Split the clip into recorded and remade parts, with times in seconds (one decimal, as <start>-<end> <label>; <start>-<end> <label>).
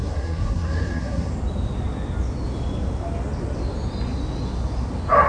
0.0-1.3 remade; 1.3-5.3 recorded